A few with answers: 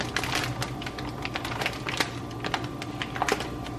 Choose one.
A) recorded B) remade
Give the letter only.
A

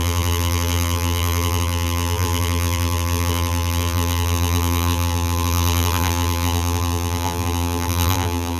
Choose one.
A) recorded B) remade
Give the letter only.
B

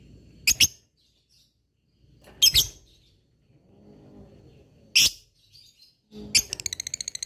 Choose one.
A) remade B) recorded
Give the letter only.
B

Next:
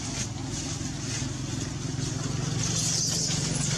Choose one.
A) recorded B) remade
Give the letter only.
A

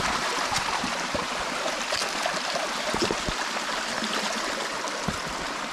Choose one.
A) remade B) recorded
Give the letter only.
B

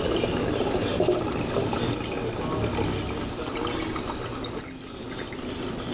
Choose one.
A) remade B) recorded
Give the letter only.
B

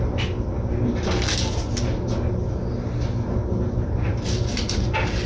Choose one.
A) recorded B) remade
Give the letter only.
A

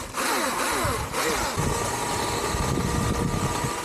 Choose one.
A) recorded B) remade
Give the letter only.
A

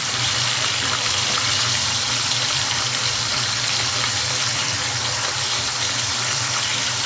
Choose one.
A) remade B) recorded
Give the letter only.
A